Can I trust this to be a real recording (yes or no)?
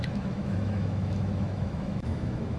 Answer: no